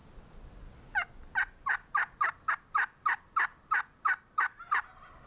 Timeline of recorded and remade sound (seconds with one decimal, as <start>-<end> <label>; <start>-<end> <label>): 0.0-5.3 recorded